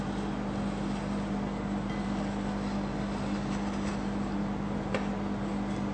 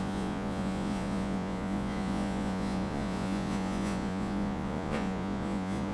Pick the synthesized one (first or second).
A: second